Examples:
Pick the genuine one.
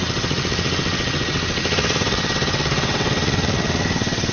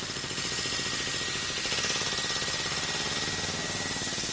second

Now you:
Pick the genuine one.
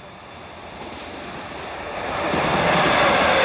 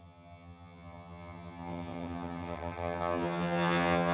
first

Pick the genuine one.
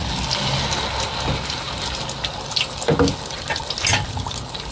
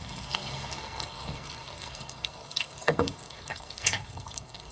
first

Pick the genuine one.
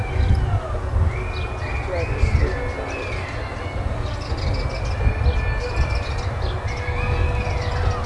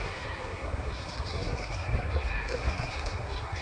first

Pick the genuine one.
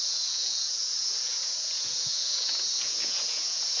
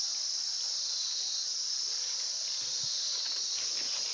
second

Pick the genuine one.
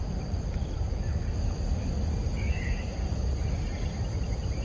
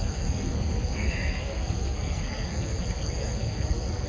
first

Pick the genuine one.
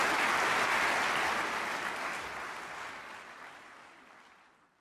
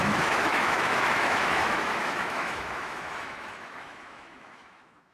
first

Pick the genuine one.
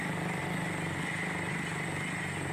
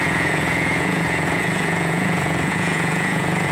first